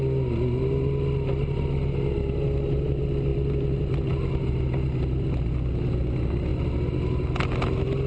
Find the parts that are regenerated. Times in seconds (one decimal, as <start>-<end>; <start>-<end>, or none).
none